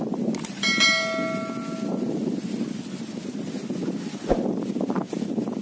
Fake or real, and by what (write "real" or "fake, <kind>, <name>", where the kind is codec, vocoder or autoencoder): real